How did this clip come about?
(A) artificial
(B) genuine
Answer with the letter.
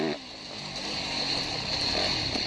B